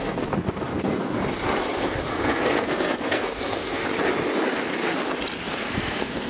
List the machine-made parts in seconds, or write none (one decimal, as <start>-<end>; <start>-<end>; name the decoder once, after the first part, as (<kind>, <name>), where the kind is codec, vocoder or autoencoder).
0.0-1.2 (codec, SNAC); 2.1-3.8; 5.6-6.3